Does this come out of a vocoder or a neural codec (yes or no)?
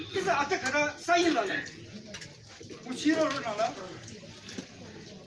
no